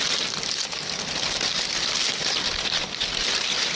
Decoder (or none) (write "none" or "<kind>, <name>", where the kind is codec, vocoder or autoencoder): none